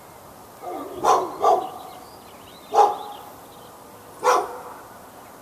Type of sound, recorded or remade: recorded